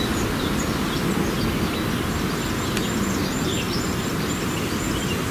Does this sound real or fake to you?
real